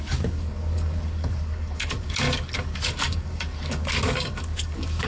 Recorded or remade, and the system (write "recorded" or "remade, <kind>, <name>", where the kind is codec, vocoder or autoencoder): remade, codec, DAC